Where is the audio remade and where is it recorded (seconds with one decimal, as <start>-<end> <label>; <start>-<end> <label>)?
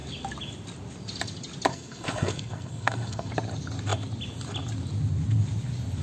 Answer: 0.0-1.7 recorded; 1.7-3.3 remade; 3.3-6.0 recorded